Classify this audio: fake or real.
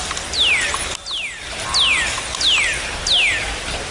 real